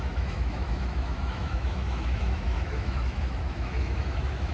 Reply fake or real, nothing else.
fake